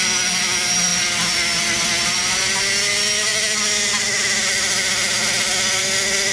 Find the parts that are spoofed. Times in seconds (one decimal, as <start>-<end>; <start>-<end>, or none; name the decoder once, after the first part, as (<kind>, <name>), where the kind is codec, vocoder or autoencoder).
none